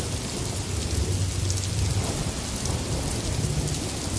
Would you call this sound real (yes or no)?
yes